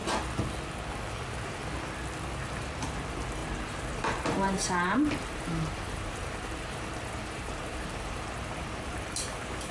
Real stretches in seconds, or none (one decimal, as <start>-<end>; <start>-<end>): 0.0-0.9; 1.6-2.5